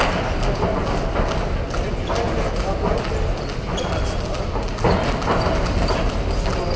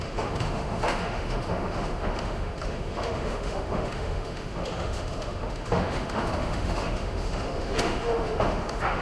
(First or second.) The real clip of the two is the first